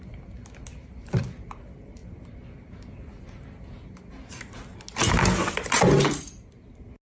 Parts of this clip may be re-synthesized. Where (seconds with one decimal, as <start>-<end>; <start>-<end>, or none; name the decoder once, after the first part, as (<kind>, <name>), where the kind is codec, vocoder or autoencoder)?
none